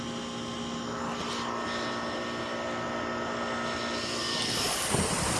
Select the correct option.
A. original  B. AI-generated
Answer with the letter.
A